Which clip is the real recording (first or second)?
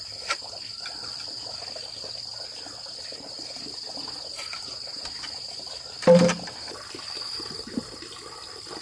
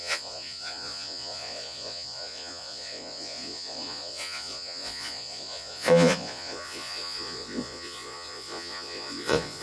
first